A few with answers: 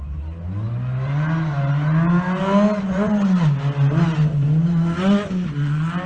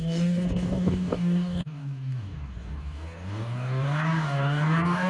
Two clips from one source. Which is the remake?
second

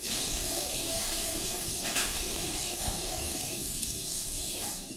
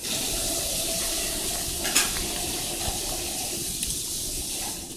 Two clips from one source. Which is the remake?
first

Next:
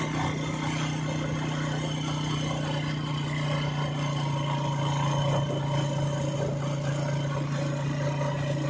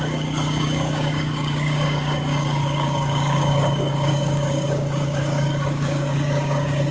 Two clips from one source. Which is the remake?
second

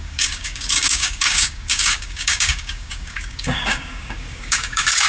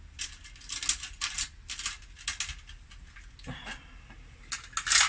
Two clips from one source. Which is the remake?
first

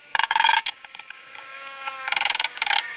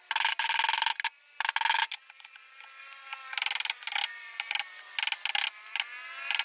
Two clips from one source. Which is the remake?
first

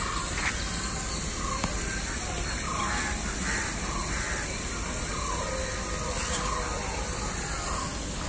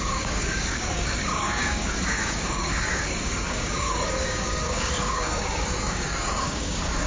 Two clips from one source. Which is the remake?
second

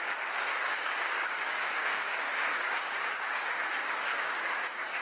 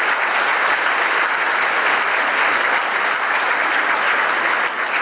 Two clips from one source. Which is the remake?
first